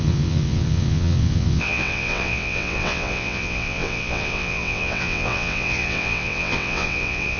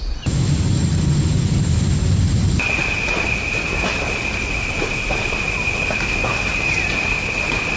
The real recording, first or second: second